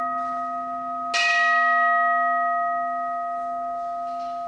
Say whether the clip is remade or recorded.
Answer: recorded